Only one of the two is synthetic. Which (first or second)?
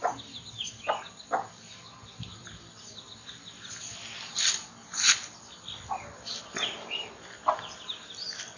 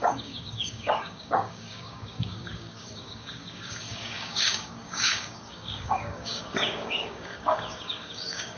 second